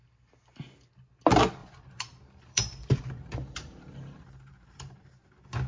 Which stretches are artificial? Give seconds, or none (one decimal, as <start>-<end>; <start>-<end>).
1.6-5.0